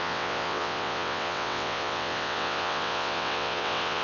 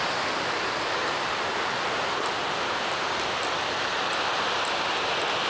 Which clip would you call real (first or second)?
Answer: second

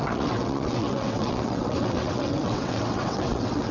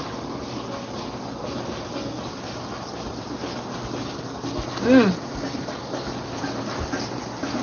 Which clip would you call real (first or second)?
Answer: second